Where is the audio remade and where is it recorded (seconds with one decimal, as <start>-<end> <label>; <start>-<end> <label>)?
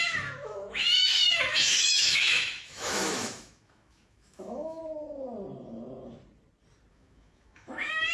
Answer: 0.0-4.8 remade; 4.8-6.9 recorded; 6.9-8.1 remade